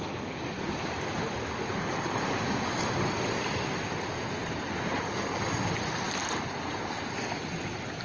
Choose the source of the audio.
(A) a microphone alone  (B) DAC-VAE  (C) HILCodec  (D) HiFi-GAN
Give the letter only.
A